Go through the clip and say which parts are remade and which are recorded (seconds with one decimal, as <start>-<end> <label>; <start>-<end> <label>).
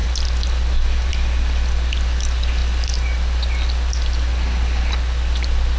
0.0-5.8 recorded